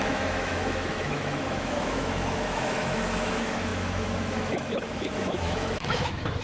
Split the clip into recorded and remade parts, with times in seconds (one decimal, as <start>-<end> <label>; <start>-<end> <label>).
0.0-6.4 remade